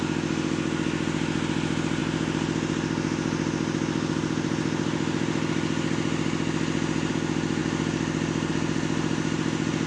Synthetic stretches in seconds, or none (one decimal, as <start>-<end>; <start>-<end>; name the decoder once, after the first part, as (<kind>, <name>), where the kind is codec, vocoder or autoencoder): none